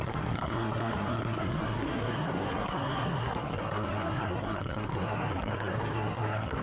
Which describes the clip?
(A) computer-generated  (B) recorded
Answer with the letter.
A